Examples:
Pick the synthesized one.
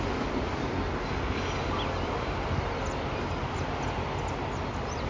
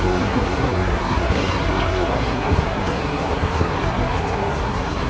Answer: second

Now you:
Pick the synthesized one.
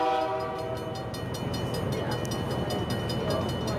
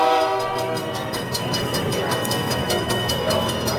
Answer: second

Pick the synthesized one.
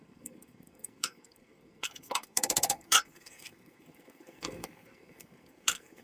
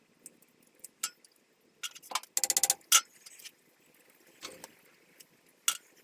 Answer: first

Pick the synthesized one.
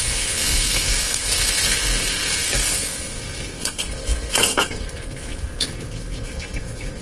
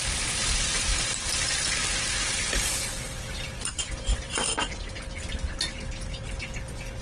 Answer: first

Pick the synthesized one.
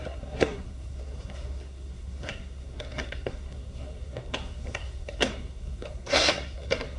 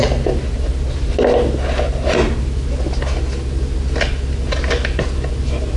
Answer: first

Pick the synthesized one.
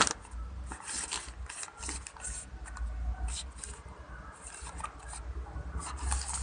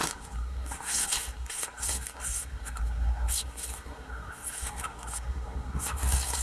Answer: second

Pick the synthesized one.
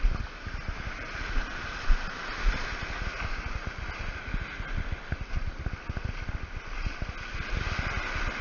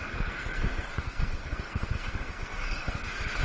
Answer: second